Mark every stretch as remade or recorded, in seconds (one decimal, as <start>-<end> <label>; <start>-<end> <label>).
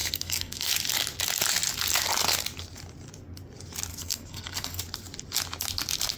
0.0-0.7 remade; 0.7-3.9 recorded; 3.9-4.8 remade; 4.8-6.2 recorded